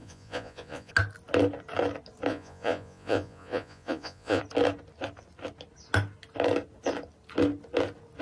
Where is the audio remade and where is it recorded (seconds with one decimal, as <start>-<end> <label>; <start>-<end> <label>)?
0.0-0.9 remade; 0.9-2.3 recorded; 2.3-4.4 remade; 4.4-8.2 recorded